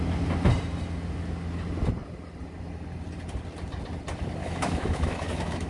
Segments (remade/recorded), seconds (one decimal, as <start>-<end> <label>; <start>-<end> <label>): 0.0-4.4 recorded; 4.4-5.7 remade